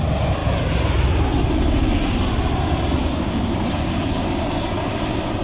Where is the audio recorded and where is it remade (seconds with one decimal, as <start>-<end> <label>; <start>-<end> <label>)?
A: 0.0-3.0 recorded; 3.0-4.7 remade; 4.7-5.4 recorded